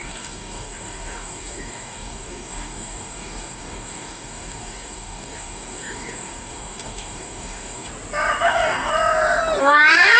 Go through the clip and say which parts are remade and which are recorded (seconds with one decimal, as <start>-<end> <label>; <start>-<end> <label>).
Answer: 0.0-7.9 remade; 7.9-8.5 recorded; 8.5-8.9 remade; 8.9-9.6 recorded; 9.6-10.2 remade